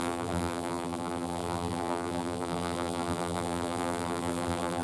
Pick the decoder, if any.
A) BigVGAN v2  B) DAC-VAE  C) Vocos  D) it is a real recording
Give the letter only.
A